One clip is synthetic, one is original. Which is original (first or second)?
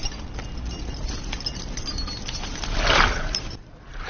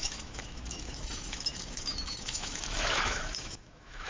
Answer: first